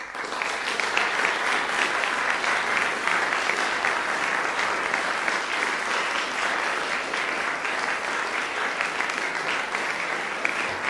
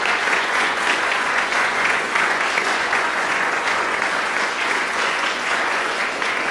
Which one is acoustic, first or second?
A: first